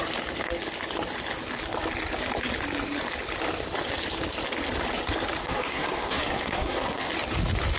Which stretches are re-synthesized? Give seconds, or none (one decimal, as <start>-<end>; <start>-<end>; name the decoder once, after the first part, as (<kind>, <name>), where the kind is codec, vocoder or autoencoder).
5.4-7.1 (codec, SNAC)